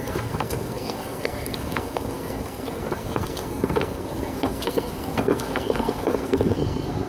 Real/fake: fake